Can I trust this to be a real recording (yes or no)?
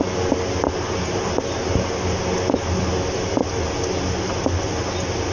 yes